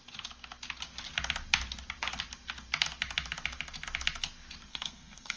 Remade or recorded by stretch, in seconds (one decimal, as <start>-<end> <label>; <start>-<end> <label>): 0.0-4.7 recorded; 4.7-5.4 remade